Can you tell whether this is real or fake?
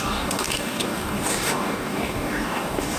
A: fake